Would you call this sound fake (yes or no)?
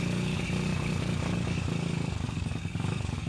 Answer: yes